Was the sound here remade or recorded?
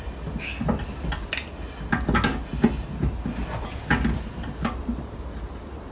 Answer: recorded